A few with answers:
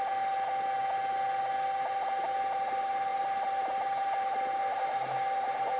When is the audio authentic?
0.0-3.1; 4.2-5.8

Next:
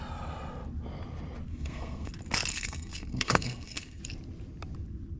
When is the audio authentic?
0.0-1.5; 2.1-2.5; 4.0-5.2

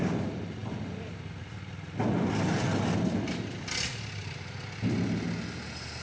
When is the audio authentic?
0.0-6.0

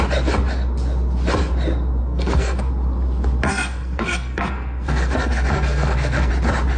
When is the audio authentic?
0.0-2.0; 2.7-3.5; 6.3-6.8

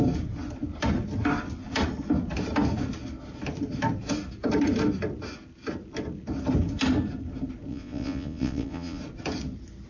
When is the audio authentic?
0.0-7.7; 9.0-9.9